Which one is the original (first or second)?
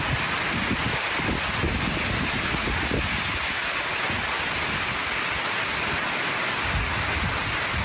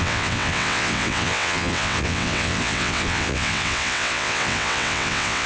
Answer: first